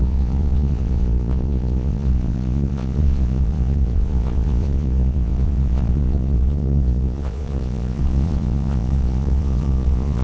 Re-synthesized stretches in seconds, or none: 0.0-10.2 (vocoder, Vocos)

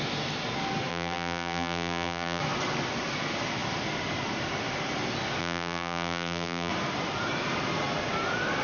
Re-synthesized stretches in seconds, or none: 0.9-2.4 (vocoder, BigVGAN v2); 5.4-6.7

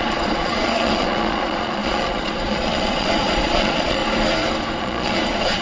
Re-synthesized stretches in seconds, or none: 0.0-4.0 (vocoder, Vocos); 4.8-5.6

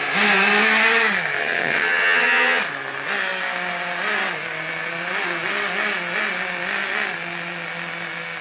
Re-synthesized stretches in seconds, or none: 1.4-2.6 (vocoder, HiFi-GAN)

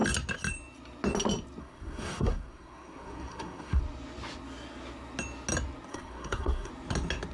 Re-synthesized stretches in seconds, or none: 1.6-3.8 (codec, SNAC); 5.9-6.7

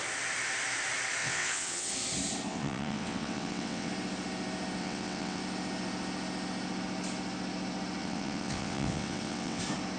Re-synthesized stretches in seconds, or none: 1.2-1.9 (vocoder, WaveNeXt); 2.5-3.9; 4.8-5.4; 8.0-9.6

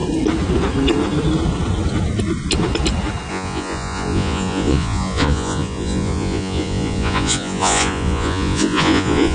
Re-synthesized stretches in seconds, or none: 3.3-9.3 (vocoder, Vocos)

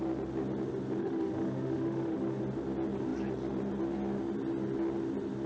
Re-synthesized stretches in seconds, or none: 1.0-2.4 (autoencoder, DAC-VAE)